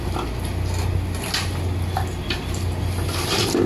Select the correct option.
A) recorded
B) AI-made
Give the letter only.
A